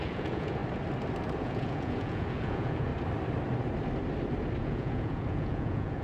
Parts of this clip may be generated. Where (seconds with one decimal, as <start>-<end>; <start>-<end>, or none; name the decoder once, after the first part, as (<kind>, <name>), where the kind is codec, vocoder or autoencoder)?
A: 0.0-0.6 (vocoder, Vocos); 1.4-2.9; 4.6-6.0